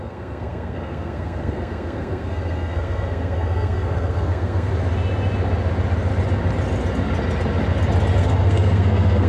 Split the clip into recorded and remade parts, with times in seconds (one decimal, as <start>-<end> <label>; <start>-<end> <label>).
0.0-4.7 remade; 4.7-8.2 recorded; 8.2-9.3 remade